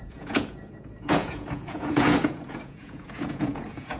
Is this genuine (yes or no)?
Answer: no